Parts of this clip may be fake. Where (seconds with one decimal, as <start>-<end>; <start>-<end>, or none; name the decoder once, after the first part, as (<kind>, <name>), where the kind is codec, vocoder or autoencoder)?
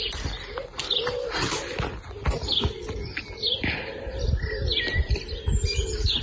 none